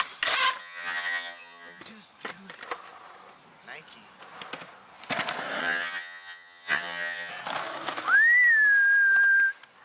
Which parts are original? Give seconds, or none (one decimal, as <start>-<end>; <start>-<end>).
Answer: 0.0-0.6; 1.8-5.6; 7.3-9.8